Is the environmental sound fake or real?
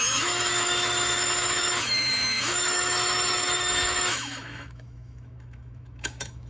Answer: fake